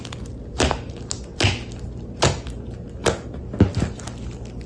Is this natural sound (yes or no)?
yes